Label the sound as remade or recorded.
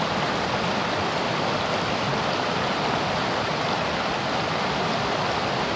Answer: recorded